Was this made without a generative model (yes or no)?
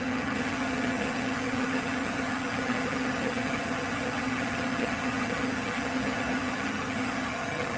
no